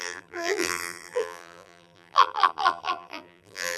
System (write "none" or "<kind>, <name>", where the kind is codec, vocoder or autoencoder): vocoder, BigVGAN v2